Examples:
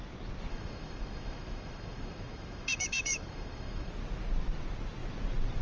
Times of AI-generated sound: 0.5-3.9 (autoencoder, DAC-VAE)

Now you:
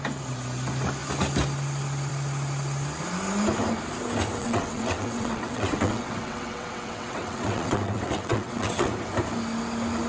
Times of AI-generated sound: 4.4-8.9 (vocoder, WaveNeXt)

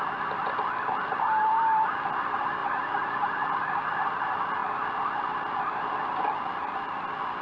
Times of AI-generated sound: 2.6-3.6 (vocoder, Vocos)

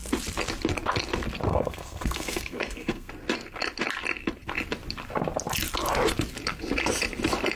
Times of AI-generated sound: 1.5-3.1 (codec, SNAC)